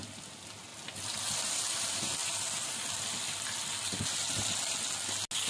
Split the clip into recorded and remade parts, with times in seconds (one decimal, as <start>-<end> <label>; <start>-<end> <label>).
0.0-5.5 recorded